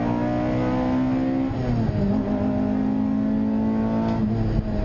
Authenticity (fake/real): real